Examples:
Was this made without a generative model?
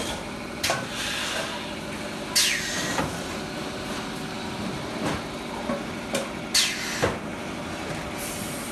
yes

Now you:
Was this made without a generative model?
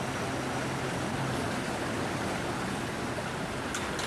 yes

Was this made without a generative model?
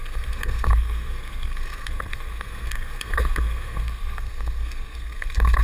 no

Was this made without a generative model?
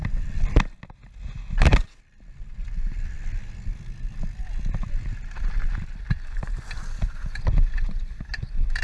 yes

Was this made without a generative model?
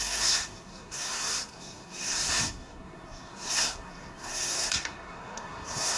no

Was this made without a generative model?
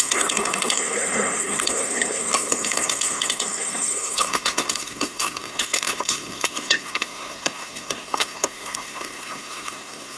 no